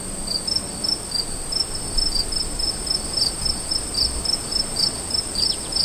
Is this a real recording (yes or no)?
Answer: yes